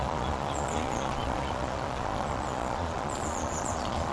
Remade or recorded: remade